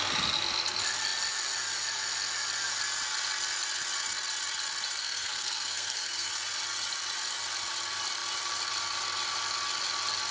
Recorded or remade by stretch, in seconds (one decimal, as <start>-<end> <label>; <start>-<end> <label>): 0.0-5.0 recorded; 5.0-6.3 remade; 6.3-10.3 recorded